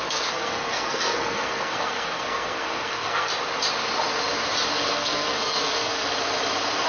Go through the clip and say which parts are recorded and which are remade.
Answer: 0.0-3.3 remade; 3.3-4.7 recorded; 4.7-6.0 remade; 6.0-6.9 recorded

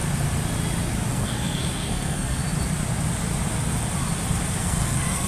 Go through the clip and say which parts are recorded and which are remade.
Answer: 0.0-1.1 recorded; 1.1-2.4 remade; 2.4-4.6 recorded; 4.6-5.3 remade

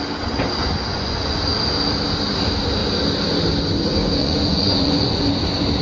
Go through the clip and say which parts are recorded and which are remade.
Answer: 0.0-0.9 recorded; 0.9-1.4 remade; 1.4-4.2 recorded; 4.2-5.2 remade; 5.2-5.8 recorded

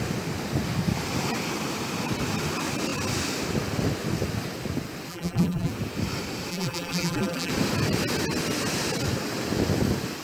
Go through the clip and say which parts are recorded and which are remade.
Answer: 0.0-5.1 recorded; 5.1-5.7 remade; 5.7-6.5 recorded; 6.5-7.5 remade; 7.5-10.2 recorded

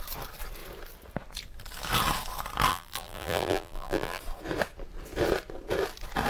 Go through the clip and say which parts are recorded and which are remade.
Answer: 0.0-2.7 recorded; 2.7-4.2 remade; 4.2-6.3 recorded